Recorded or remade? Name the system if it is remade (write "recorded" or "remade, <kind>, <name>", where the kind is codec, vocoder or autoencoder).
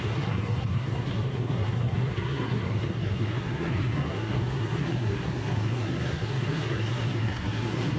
remade, codec, SNAC